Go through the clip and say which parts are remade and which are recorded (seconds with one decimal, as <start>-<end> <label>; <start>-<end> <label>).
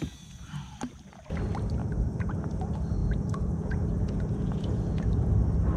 0.0-1.8 recorded; 1.8-2.3 remade; 2.3-3.0 recorded; 3.0-5.1 remade; 5.1-5.8 recorded